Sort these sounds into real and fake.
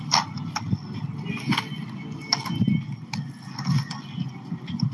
real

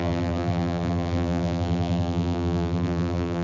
fake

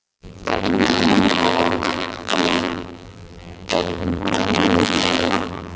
fake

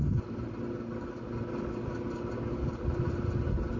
real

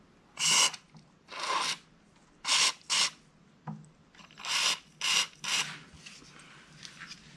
real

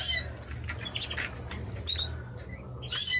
real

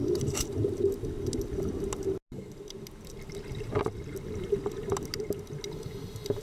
real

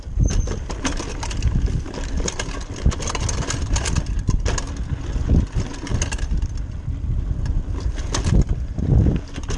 real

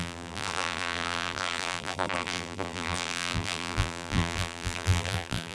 fake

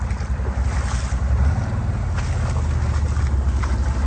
real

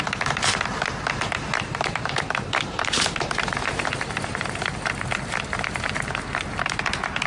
fake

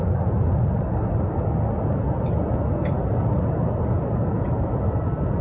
real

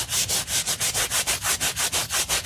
fake